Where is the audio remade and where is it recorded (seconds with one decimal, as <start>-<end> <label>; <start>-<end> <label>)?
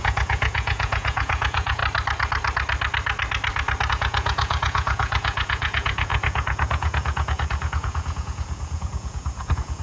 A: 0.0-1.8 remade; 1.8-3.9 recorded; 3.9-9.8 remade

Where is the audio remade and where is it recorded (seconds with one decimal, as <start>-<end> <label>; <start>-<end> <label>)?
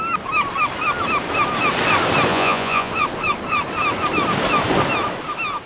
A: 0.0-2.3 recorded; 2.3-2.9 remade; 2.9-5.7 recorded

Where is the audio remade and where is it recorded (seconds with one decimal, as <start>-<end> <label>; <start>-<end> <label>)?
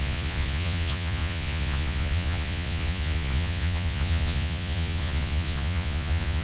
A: 0.0-6.4 remade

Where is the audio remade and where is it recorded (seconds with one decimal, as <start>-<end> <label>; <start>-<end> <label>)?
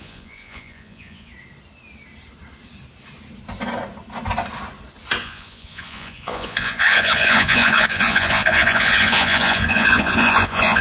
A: 0.0-1.3 remade; 1.3-5.2 recorded; 5.2-10.8 remade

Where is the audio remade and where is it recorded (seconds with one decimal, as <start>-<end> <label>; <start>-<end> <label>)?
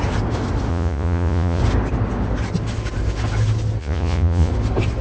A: 0.0-0.7 recorded; 0.7-1.6 remade; 1.6-3.8 recorded; 3.8-4.5 remade; 4.5-5.0 recorded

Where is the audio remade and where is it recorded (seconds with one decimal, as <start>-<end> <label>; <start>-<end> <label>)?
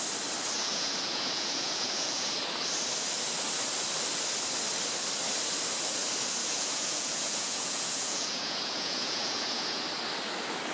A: 0.0-0.6 recorded; 0.6-2.3 remade; 2.3-6.4 recorded; 6.4-9.8 remade; 9.8-10.7 recorded